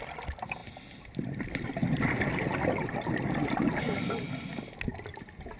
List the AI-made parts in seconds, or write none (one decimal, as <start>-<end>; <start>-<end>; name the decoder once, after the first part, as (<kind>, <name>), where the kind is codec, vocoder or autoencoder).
none